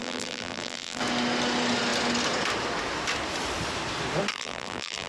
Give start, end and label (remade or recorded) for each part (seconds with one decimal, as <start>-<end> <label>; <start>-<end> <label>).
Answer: 0.0-1.0 remade; 1.0-4.3 recorded; 4.3-5.1 remade